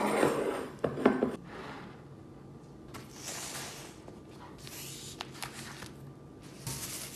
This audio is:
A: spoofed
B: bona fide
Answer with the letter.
B